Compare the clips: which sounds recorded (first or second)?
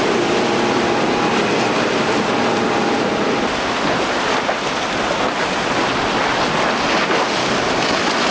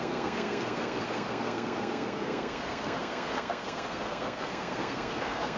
first